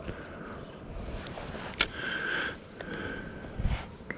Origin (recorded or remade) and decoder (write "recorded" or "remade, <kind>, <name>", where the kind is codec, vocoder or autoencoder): recorded